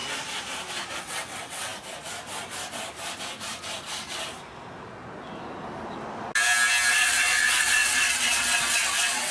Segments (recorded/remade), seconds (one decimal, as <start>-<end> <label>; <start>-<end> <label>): 0.0-1.0 recorded; 1.0-1.7 remade; 1.7-6.9 recorded; 6.9-9.3 remade